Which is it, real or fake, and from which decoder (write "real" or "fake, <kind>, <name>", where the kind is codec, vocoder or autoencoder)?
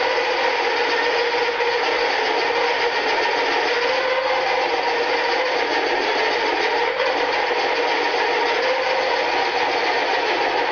real